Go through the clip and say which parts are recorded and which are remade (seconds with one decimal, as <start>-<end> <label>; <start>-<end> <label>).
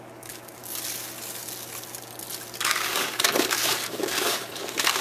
0.0-0.6 remade; 0.6-2.6 recorded; 2.6-5.0 remade